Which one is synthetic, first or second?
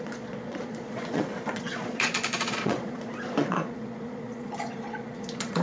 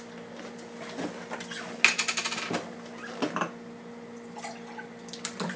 first